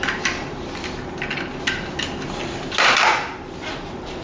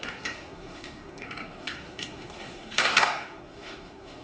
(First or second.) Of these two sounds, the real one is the first